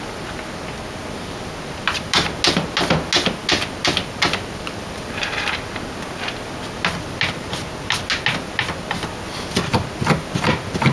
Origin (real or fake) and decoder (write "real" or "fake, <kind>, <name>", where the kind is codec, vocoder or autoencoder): real